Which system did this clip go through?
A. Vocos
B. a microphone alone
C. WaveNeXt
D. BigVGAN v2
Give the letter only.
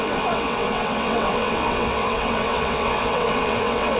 C